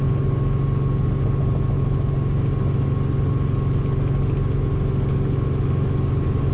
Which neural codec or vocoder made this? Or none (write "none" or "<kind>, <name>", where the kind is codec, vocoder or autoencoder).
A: none